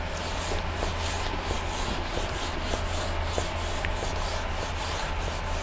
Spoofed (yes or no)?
no